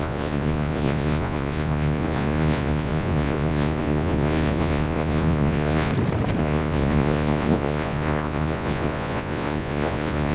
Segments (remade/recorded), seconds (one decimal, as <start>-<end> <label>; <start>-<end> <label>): 0.0-5.9 remade; 5.9-6.4 recorded; 6.4-10.3 remade